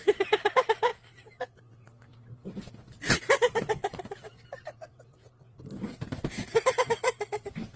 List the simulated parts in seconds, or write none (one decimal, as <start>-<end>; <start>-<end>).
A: 0.9-5.6